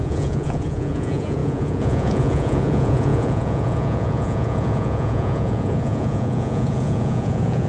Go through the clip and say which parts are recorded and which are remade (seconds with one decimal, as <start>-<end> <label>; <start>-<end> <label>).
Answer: 0.0-7.7 remade